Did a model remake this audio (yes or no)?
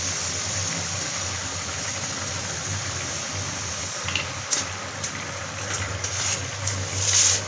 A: no